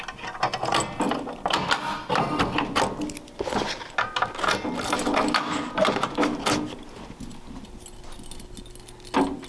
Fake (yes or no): no